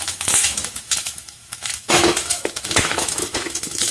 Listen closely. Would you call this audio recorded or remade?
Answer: remade